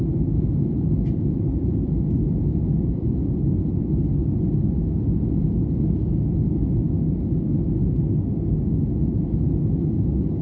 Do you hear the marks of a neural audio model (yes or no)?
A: no